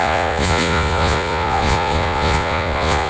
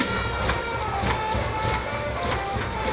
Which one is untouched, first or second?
second